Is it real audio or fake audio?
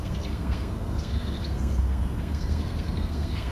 fake